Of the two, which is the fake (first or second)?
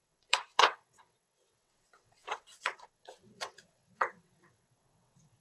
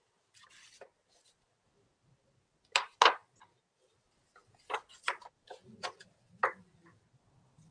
first